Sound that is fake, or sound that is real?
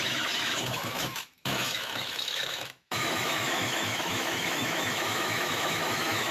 fake